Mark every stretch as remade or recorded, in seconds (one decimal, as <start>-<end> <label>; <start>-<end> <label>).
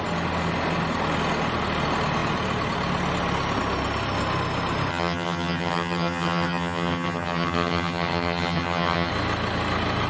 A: 0.0-4.9 recorded; 4.9-9.1 remade; 9.1-10.1 recorded